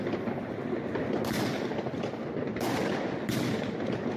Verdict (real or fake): real